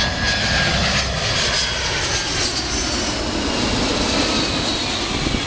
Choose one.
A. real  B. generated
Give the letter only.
A